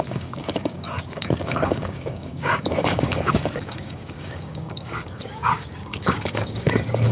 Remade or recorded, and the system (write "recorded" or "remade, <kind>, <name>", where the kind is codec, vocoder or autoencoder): remade, codec, DAC